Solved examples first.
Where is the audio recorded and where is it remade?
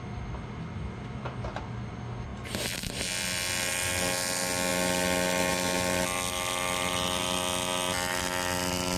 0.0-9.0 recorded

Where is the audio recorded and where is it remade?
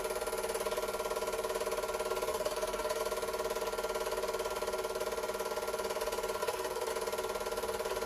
0.0-2.3 recorded; 2.3-3.0 remade; 3.0-6.4 recorded; 6.4-6.9 remade; 6.9-8.1 recorded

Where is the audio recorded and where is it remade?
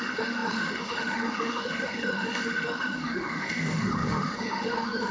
0.0-5.1 remade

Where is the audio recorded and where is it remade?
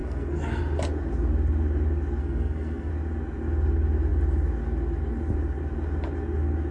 0.0-0.6 remade; 0.6-2.2 recorded; 2.2-2.9 remade; 2.9-6.7 recorded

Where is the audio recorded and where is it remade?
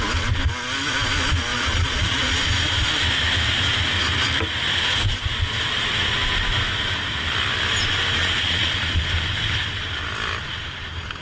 0.0-1.5 recorded; 1.5-2.4 remade; 2.4-8.2 recorded; 8.2-9.0 remade; 9.0-11.2 recorded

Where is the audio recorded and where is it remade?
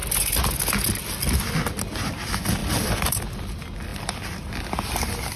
0.0-2.6 recorded; 2.6-3.2 remade; 3.2-3.9 recorded; 3.9-4.5 remade; 4.5-5.4 recorded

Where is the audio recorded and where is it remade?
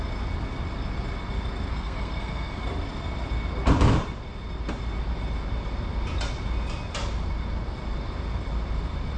0.0-1.7 recorded; 1.7-2.6 remade; 2.6-9.2 recorded